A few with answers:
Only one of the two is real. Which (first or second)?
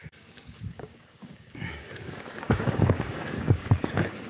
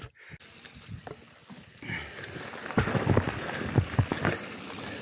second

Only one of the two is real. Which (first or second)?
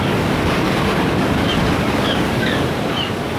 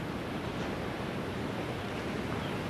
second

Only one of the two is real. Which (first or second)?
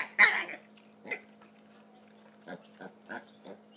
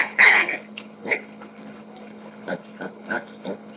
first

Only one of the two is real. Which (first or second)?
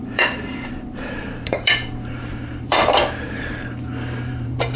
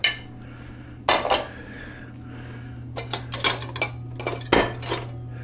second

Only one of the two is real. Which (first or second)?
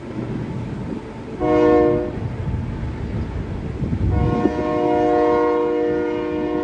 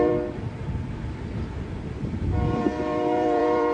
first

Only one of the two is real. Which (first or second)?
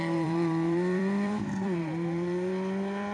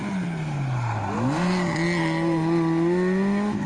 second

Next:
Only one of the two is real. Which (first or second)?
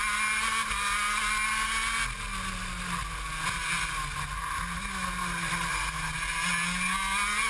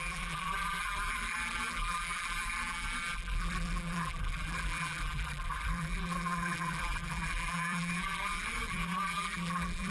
first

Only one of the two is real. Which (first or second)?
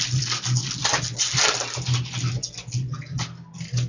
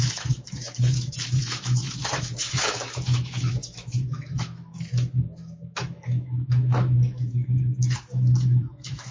first